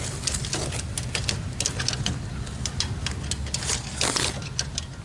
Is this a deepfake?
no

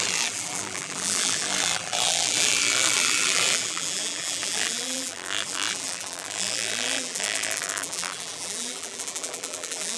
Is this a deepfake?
yes